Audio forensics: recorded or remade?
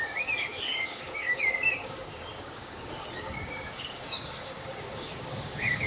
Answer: remade